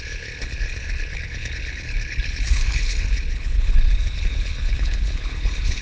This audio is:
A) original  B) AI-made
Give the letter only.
B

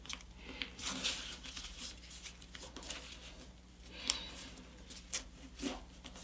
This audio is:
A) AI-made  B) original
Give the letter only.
B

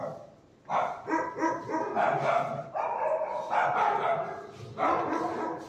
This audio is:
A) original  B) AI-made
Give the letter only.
A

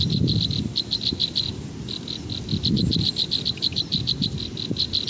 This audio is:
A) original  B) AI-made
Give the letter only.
A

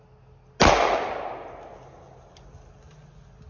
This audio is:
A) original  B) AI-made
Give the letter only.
A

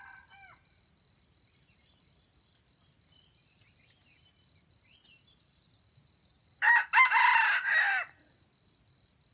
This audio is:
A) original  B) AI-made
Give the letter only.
A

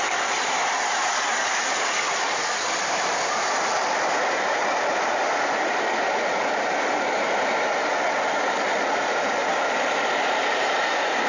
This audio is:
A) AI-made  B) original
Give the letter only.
A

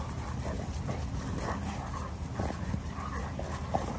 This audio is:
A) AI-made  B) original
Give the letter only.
B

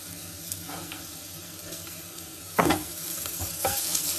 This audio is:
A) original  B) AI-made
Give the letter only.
B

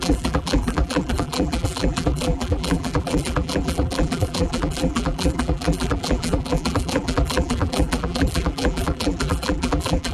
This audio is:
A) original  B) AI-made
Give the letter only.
B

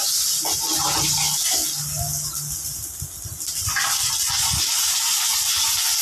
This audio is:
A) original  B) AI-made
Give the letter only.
A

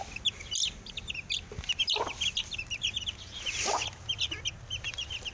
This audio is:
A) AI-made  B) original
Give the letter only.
B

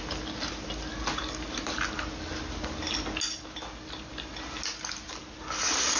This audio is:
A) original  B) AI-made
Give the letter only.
A